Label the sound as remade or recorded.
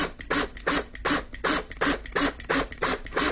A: recorded